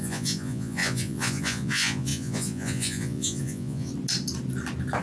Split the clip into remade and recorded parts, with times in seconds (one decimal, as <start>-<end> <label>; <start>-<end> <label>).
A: 0.0-3.9 remade; 3.9-5.0 recorded